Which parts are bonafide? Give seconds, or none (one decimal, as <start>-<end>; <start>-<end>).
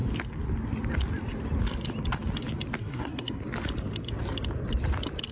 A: 0.0-2.8; 3.4-5.3